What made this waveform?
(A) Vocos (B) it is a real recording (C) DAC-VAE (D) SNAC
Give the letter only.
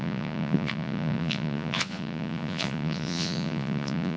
A